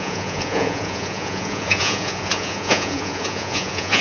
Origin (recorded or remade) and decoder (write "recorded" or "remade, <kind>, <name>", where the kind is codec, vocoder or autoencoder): remade, vocoder, Vocos